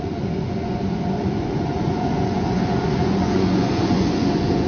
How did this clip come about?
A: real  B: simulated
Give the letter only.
B